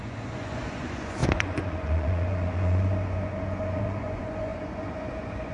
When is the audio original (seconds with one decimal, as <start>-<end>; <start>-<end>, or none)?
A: none